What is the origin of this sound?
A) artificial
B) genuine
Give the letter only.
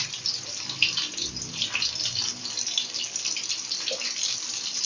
B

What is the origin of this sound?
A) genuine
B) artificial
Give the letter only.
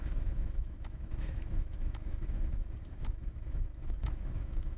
B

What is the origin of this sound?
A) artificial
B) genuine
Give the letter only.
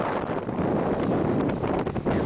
B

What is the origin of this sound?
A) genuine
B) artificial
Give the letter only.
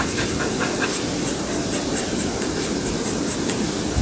B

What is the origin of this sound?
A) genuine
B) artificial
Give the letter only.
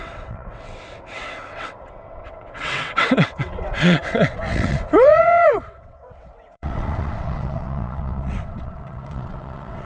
B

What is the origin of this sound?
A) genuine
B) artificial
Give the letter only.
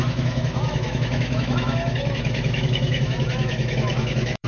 B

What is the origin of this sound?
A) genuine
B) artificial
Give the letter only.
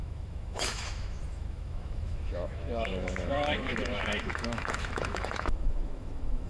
B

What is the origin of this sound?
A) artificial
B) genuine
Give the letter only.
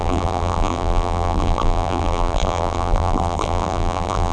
A